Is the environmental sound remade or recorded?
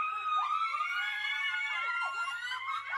recorded